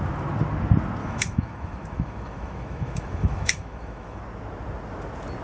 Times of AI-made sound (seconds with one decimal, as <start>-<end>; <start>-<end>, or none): 1.0-4.2